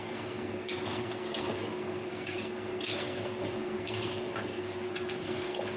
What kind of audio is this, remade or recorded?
remade